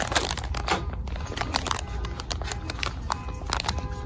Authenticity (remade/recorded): recorded